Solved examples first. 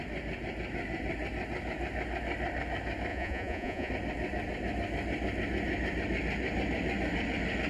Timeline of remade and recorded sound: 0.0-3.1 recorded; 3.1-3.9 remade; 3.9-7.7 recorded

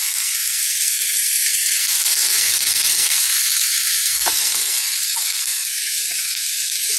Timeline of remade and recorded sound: 0.0-7.0 remade

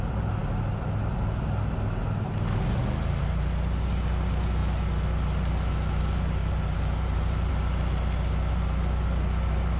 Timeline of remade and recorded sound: 0.0-6.4 recorded; 6.4-7.5 remade; 7.5-9.8 recorded